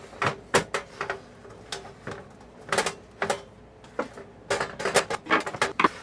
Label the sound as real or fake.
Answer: real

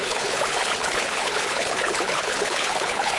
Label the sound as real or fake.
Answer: fake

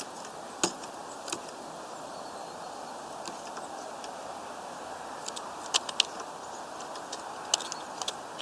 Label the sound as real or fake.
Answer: real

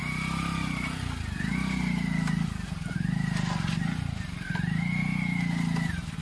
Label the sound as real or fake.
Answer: real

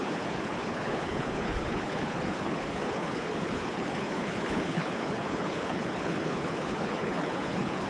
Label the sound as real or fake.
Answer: fake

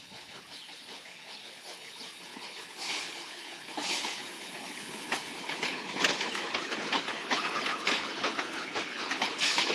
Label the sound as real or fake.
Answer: fake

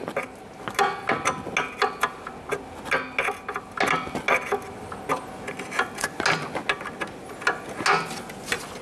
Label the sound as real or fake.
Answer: real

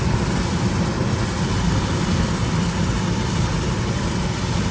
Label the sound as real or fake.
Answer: real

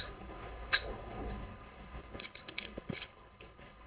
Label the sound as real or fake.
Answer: fake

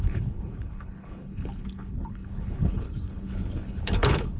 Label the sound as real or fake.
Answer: fake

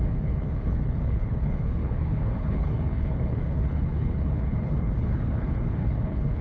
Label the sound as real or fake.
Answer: fake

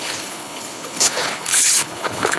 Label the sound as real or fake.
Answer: fake